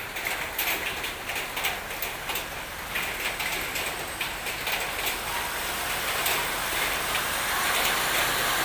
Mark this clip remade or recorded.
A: recorded